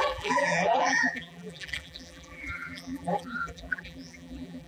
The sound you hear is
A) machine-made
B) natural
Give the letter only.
A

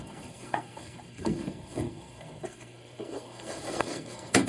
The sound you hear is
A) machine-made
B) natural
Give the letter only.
A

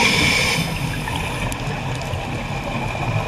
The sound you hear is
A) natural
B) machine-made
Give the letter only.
A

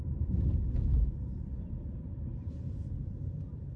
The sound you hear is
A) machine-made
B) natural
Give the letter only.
A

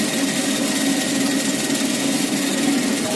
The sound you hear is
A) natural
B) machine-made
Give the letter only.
A